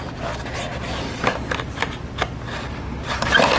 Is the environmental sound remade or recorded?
recorded